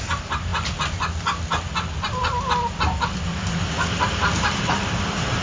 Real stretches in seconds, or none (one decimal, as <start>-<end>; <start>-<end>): 0.0-5.4